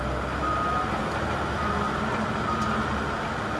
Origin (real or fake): real